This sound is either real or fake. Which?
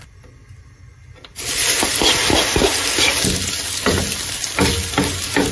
real